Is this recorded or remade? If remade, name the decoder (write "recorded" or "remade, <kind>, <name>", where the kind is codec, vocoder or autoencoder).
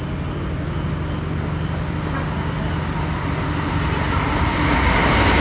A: recorded